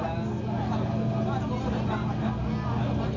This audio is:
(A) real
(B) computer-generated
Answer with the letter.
A